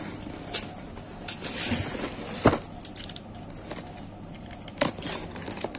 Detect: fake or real real